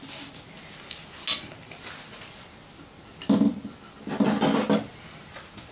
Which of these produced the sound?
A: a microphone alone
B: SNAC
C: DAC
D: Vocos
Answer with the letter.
A